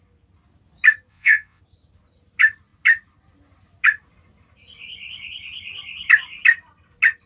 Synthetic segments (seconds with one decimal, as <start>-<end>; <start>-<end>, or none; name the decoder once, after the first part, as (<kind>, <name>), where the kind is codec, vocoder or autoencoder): 1.1-1.6 (vocoder, WaveNeXt)